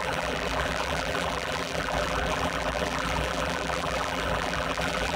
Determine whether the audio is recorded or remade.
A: remade